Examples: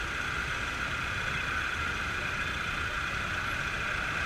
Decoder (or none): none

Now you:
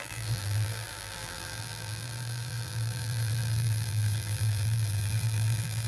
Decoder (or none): vocoder, BigVGAN v2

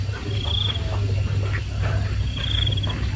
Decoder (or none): none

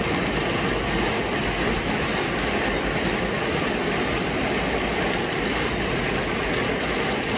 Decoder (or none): none